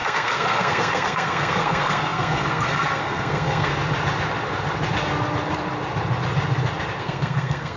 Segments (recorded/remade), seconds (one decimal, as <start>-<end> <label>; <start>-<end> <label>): 0.0-3.7 remade; 3.7-7.0 recorded; 7.0-7.8 remade

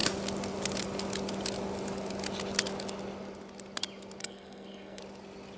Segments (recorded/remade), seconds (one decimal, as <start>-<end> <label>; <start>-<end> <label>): 0.0-4.2 recorded; 4.2-5.0 remade; 5.0-5.6 recorded

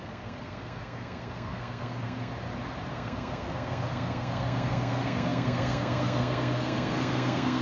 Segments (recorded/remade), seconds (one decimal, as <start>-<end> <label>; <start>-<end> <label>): 0.0-2.3 remade; 2.3-2.9 recorded; 2.9-7.6 remade

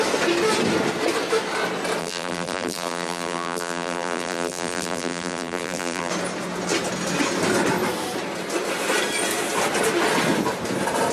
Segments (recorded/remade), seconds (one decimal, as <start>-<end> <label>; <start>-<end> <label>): 0.0-2.0 recorded; 2.0-6.1 remade; 6.1-11.1 recorded

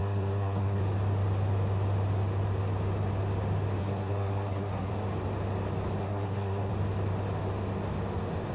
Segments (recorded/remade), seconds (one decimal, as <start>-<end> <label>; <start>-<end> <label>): 0.0-0.8 remade; 0.8-3.8 recorded; 3.8-4.9 remade; 4.9-6.0 recorded; 6.0-6.7 remade; 6.7-8.5 recorded

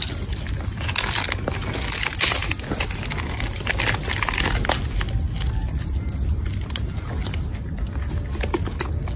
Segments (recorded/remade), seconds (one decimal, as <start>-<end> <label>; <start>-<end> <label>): 0.0-9.2 recorded

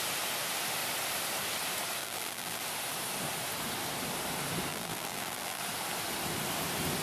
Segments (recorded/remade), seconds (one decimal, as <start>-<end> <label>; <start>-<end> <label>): 0.0-2.0 recorded; 2.0-2.6 remade; 2.6-4.7 recorded; 4.7-5.6 remade; 5.6-7.0 recorded

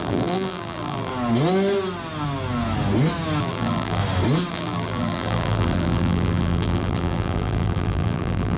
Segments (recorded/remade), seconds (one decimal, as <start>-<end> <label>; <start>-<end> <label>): 0.0-1.1 remade; 1.1-3.4 recorded; 3.4-4.0 remade; 4.0-4.5 recorded; 4.5-8.6 remade